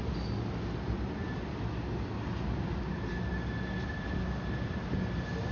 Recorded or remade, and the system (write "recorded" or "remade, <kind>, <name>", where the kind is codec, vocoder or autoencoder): recorded